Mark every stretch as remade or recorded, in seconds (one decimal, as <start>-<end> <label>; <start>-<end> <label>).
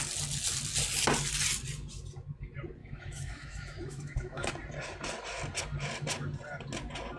0.0-2.8 recorded; 2.8-4.5 remade; 4.5-7.2 recorded